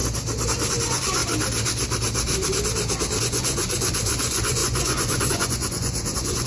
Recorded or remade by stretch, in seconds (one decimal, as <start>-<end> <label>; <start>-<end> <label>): 0.0-0.7 recorded; 0.7-1.2 remade; 1.2-3.2 recorded; 3.2-6.5 remade

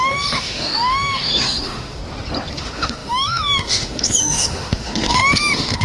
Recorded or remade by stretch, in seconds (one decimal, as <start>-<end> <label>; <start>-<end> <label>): 0.0-2.0 remade; 2.0-2.6 recorded; 2.6-5.8 remade

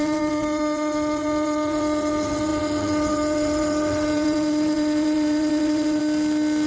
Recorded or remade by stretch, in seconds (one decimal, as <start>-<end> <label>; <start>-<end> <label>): 0.0-6.0 remade; 6.0-6.7 recorded

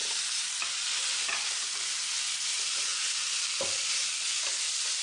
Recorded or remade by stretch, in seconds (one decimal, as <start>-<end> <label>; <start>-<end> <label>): 0.0-5.0 recorded

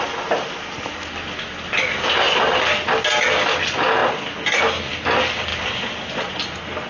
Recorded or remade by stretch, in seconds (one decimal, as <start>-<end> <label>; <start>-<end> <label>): 0.0-6.9 recorded